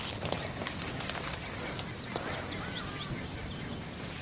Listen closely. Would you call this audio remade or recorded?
recorded